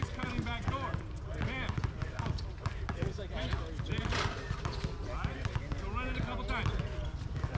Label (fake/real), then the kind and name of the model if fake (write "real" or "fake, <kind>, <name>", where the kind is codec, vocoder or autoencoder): real